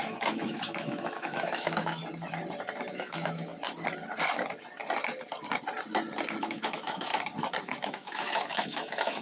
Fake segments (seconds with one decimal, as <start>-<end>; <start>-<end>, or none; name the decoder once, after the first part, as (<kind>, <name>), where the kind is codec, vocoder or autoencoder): 0.0-2.0 (autoencoder, DAC-VAE); 2.9-3.5; 6.4-7.1; 7.6-9.2